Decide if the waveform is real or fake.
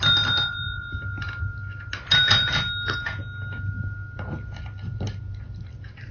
real